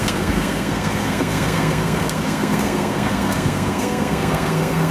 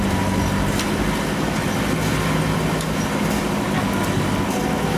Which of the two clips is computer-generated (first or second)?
first